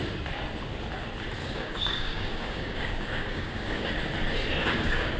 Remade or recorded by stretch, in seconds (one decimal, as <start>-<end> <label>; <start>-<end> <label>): 0.0-1.4 recorded; 1.4-3.9 remade; 3.9-4.6 recorded; 4.6-5.2 remade